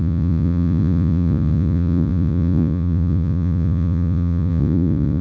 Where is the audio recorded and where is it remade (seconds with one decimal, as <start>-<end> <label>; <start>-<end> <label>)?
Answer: 0.0-5.2 remade